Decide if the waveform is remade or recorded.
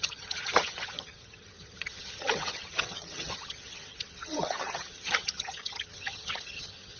remade